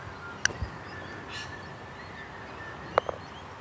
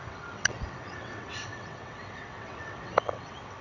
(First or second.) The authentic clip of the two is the first